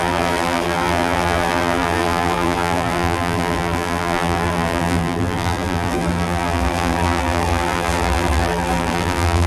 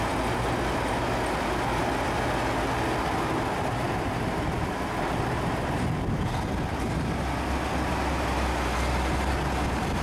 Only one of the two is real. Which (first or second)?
second